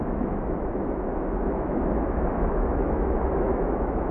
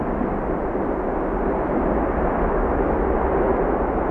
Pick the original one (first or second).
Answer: second